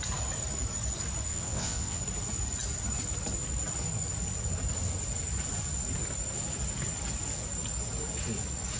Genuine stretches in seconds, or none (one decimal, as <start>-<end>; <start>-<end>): 0.0-1.3; 2.0-8.8